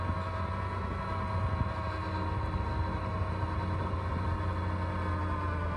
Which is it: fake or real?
real